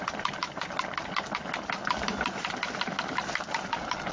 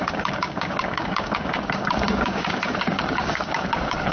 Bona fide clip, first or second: first